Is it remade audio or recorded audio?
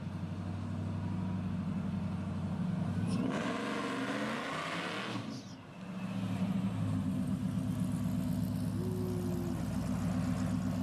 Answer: recorded